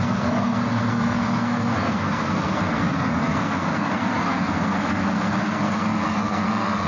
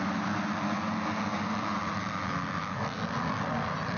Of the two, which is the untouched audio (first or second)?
second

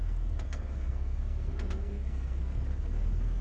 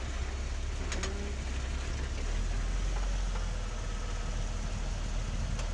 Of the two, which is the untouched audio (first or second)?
second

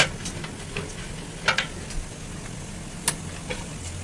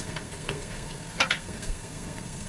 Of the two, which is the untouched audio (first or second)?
first